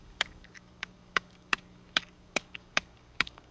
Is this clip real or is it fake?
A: fake